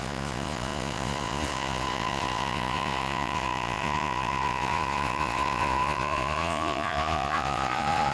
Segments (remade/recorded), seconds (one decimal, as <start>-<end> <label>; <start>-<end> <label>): 0.0-8.1 remade